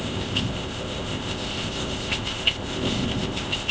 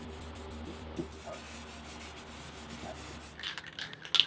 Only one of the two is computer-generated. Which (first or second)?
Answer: first